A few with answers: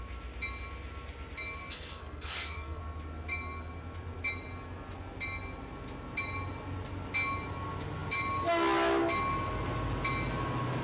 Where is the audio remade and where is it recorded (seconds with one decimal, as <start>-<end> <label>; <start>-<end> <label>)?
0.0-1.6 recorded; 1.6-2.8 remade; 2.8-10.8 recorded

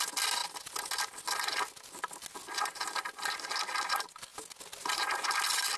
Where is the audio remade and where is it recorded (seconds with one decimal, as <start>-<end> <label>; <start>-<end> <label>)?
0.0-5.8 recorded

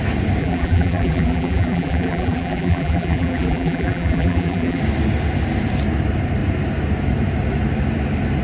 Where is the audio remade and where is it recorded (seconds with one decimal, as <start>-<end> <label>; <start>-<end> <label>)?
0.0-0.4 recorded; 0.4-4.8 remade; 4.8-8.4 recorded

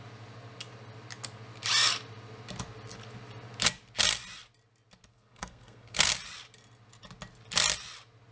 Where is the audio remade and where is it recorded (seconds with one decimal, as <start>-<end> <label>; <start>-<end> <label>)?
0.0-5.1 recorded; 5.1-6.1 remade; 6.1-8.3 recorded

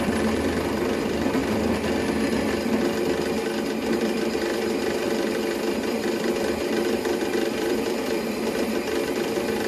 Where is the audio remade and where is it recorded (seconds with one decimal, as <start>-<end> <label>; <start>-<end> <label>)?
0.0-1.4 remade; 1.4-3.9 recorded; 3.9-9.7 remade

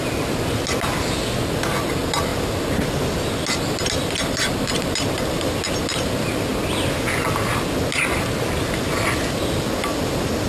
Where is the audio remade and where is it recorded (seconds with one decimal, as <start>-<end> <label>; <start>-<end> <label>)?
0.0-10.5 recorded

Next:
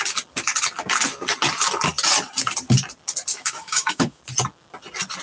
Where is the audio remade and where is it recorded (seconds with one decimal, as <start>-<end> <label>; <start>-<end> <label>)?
0.0-3.3 recorded; 3.3-4.2 remade; 4.2-5.2 recorded